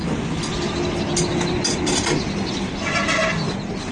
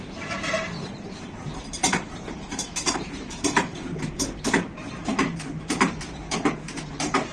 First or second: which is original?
first